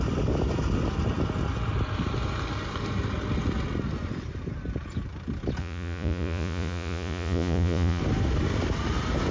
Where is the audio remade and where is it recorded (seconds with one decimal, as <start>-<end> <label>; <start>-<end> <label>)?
0.0-5.6 recorded; 5.6-8.0 remade; 8.0-9.3 recorded